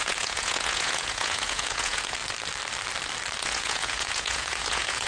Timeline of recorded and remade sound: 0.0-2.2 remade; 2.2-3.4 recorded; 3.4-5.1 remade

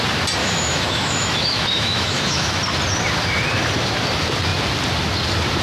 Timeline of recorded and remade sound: 0.0-0.4 recorded; 0.4-2.6 remade; 2.6-5.6 recorded

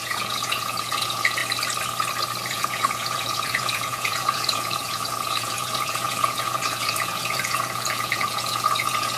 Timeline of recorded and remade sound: 0.0-1.4 remade; 1.4-2.5 recorded; 2.5-9.2 remade